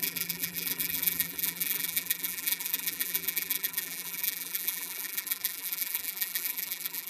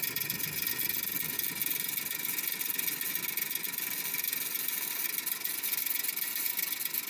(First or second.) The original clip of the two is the second